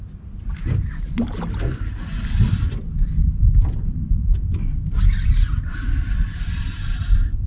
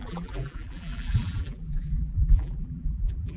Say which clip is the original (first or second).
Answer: first